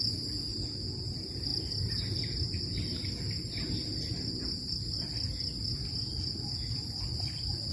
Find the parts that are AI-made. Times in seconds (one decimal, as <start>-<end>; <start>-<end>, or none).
1.5-2.6